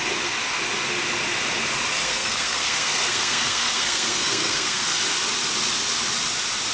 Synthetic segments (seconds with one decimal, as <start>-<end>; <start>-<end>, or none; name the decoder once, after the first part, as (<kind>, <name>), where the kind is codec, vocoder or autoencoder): 2.0-5.0 (codec, SNAC)